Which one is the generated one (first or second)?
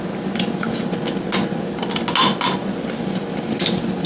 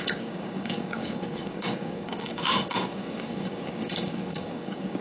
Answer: second